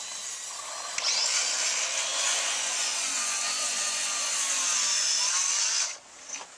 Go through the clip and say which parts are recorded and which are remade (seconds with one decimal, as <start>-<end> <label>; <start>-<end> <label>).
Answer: 0.0-2.1 recorded; 2.1-5.2 remade; 5.2-6.6 recorded